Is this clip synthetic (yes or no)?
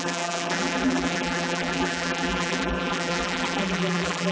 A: yes